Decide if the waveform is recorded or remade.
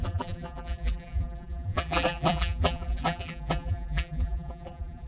remade